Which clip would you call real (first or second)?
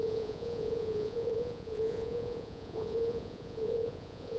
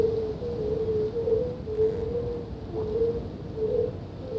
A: second